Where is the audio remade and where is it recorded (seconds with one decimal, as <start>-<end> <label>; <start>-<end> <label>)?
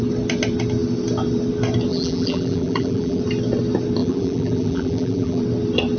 0.0-1.9 recorded; 1.9-3.2 remade; 3.2-4.0 recorded; 4.0-5.4 remade; 5.4-6.0 recorded